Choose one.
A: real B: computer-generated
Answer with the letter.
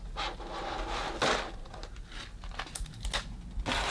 A